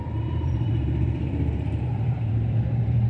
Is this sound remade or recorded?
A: remade